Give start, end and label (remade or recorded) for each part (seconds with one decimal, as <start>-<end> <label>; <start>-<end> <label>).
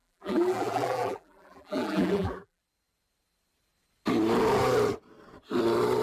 0.0-2.6 remade; 2.6-6.0 recorded